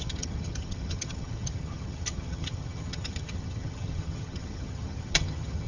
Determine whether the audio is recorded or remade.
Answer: remade